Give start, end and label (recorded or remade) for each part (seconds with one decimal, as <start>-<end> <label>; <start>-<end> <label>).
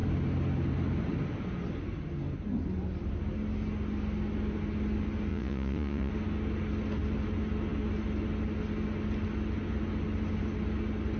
0.0-5.3 recorded; 5.3-6.1 remade; 6.1-11.2 recorded